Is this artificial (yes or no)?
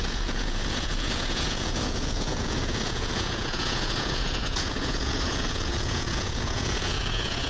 yes